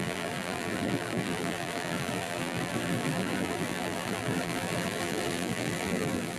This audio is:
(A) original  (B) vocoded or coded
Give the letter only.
B